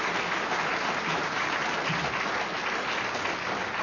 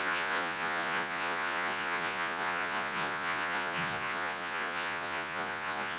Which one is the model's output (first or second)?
second